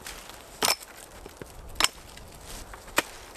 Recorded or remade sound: recorded